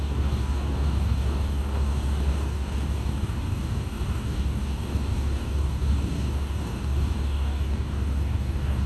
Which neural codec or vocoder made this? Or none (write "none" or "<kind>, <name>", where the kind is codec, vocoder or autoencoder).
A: codec, DAC